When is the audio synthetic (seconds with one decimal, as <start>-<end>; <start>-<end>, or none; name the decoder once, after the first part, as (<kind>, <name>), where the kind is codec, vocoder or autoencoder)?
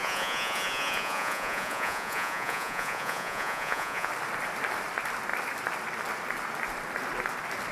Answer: 0.0-4.1 (vocoder, Vocos)